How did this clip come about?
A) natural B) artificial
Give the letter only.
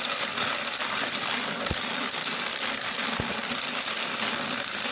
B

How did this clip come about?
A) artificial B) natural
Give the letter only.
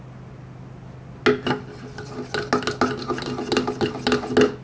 B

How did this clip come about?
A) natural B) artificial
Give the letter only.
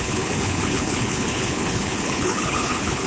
B